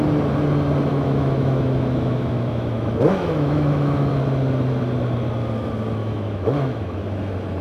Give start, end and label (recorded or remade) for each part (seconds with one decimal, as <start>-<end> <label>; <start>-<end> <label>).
0.0-0.9 recorded; 0.9-4.1 remade; 4.1-6.0 recorded; 6.0-7.0 remade; 7.0-7.6 recorded

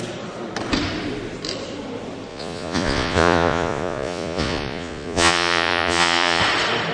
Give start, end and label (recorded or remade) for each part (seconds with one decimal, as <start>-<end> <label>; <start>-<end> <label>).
0.0-2.3 recorded; 2.3-6.4 remade; 6.4-6.9 recorded

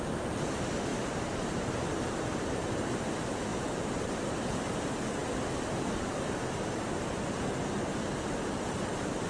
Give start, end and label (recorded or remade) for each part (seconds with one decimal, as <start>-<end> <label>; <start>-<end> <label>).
0.0-0.9 recorded; 0.9-2.7 remade; 2.7-3.5 recorded; 3.5-4.5 remade; 4.5-9.3 recorded

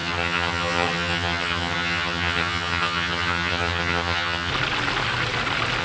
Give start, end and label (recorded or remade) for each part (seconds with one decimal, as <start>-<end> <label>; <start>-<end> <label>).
0.0-4.5 remade; 4.5-5.8 recorded

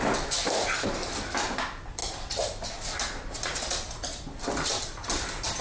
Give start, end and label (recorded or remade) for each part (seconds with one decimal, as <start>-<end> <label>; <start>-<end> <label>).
0.0-5.6 recorded